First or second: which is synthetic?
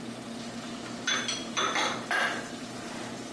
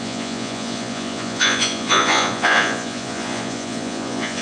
second